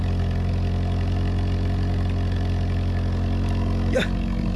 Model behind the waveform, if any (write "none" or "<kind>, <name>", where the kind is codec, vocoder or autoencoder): none